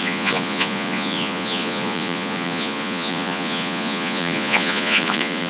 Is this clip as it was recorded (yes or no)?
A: no